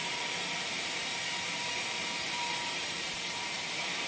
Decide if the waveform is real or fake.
fake